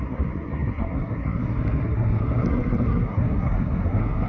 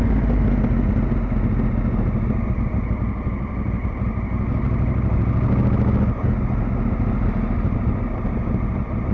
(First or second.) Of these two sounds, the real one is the second